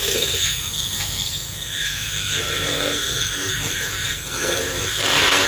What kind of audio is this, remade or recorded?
remade